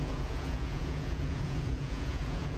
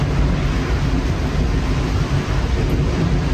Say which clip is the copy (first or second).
first